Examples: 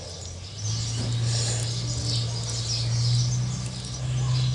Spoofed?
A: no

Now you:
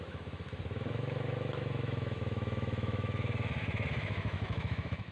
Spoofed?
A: yes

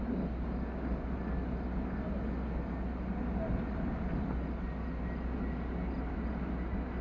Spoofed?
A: no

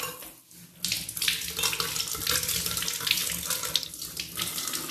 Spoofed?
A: no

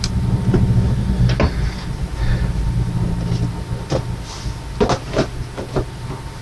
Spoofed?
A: no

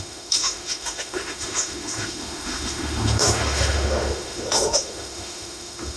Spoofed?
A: yes